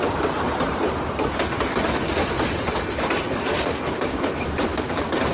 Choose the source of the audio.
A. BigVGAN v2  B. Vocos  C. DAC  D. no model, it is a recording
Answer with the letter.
D